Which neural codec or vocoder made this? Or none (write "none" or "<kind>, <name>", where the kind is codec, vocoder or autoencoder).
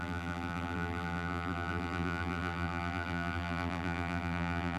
vocoder, BigVGAN v2